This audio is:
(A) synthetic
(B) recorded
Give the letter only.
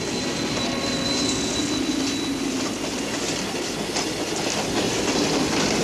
B